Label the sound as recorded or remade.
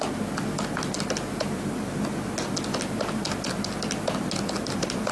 recorded